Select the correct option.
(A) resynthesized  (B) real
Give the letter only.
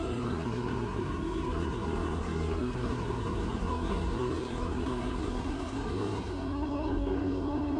A